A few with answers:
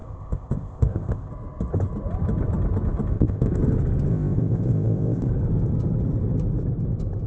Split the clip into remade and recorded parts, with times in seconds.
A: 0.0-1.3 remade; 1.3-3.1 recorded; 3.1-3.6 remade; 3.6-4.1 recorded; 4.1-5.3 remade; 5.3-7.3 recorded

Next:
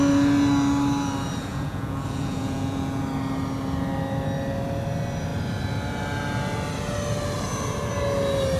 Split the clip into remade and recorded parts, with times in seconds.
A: 0.0-1.5 recorded; 1.5-3.0 remade; 3.0-8.6 recorded

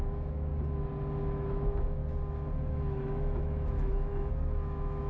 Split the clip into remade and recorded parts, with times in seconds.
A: 0.0-0.5 remade; 0.5-1.2 recorded; 1.2-2.0 remade; 2.0-2.7 recorded; 2.7-5.1 remade

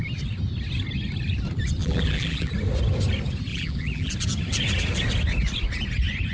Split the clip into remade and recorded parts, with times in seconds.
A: 0.0-1.8 recorded; 1.8-2.5 remade; 2.5-3.5 recorded; 3.5-4.1 remade; 4.1-6.3 recorded

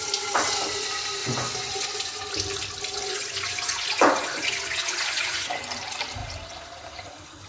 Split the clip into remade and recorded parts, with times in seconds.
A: 0.0-1.2 recorded; 1.2-2.2 remade; 2.2-3.0 recorded; 3.0-5.6 remade; 5.6-7.5 recorded